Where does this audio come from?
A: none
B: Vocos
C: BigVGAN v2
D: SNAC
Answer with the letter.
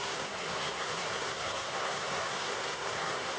D